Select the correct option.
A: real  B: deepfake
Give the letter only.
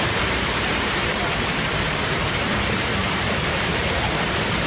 B